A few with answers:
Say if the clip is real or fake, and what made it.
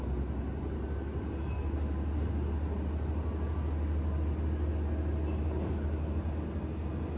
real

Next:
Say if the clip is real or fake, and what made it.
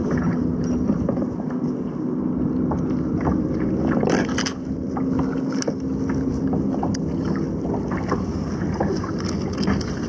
real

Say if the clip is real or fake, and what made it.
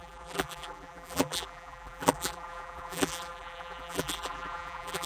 fake, vocoder, BigVGAN v2